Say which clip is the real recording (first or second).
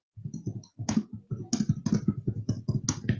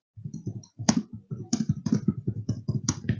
first